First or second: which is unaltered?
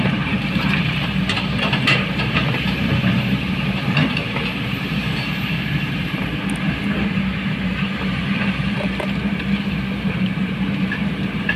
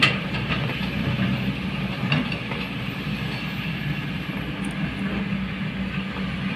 second